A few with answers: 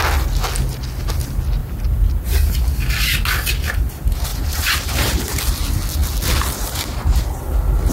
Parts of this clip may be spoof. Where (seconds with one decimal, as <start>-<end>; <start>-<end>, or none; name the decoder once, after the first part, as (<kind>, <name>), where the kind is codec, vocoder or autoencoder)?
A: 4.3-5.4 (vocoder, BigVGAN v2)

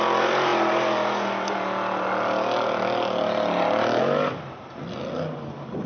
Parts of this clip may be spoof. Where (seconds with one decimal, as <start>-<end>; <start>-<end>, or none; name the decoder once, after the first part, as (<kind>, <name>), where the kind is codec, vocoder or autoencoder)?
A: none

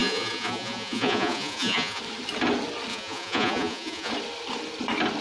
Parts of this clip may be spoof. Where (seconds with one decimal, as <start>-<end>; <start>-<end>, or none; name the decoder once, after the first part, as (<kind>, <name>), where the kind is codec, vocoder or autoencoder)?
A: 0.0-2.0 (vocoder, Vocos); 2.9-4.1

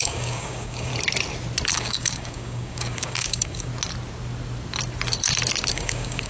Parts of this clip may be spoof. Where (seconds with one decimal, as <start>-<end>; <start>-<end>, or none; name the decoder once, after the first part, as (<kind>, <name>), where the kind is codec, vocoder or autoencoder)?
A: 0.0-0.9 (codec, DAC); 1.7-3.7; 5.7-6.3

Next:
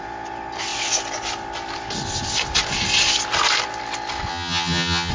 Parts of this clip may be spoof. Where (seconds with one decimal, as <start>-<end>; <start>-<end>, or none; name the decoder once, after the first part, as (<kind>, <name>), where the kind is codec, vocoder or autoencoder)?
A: 4.3-5.1 (vocoder, HiFi-GAN)